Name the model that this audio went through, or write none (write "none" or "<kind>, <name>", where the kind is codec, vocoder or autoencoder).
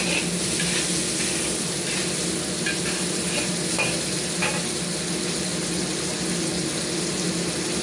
none